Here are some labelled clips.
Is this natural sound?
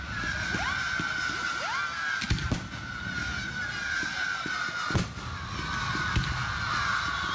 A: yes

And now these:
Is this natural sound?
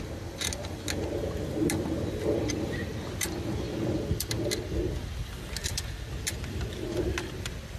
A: yes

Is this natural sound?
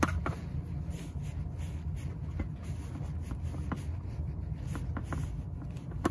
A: yes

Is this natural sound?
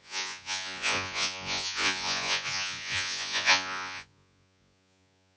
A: no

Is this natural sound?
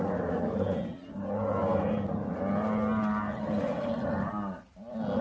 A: yes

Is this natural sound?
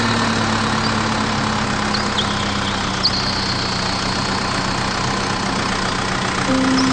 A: yes